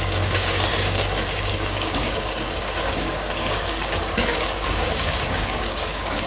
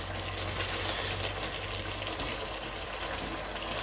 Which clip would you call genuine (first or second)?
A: second